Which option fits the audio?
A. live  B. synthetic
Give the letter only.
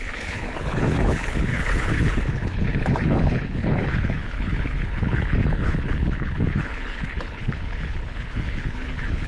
B